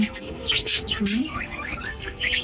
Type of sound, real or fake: fake